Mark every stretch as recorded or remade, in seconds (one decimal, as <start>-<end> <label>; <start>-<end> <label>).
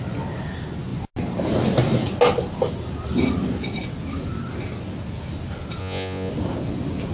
0.0-5.8 recorded; 5.8-6.3 remade; 6.3-7.1 recorded